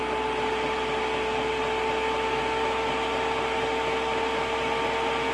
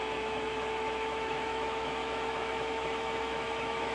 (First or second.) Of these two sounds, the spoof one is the second